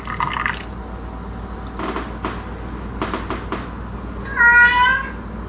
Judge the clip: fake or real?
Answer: real